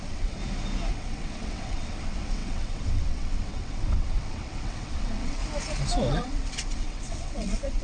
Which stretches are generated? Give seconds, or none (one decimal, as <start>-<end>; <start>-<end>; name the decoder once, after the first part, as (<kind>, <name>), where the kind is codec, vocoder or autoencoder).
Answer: 0.0-0.4 (vocoder, WaveNeXt); 0.9-5.4; 6.1-7.8